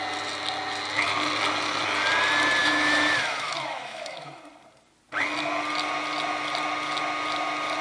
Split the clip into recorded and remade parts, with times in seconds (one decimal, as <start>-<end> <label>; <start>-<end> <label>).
0.0-2.6 recorded; 2.6-4.4 remade; 4.4-7.8 recorded